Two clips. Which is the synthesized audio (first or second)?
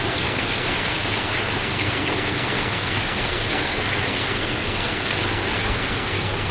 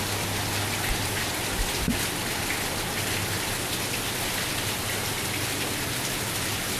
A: first